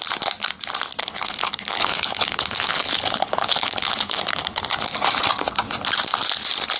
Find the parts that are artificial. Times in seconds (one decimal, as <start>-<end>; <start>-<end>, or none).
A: 1.0-4.6